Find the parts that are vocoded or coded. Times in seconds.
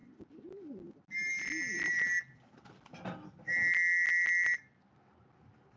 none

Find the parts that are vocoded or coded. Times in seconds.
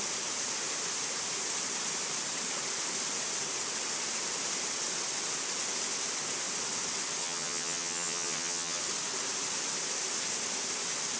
7.2-8.8 (vocoder, HiFi-GAN)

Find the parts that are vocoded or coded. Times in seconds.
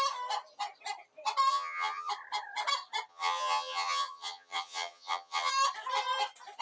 1.5-2.1 (vocoder, HiFi-GAN); 3.1-5.5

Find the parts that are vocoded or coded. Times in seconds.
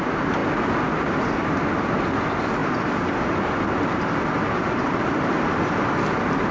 none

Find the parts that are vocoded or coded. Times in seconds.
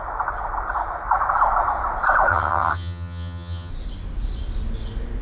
2.3-3.7 (vocoder, HiFi-GAN)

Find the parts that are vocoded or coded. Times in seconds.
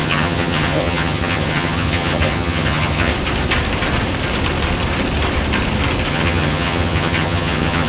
0.0-3.1 (vocoder, HiFi-GAN); 6.1-7.9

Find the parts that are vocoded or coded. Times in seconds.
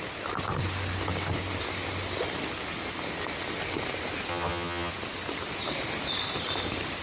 4.3-4.9 (vocoder, HiFi-GAN)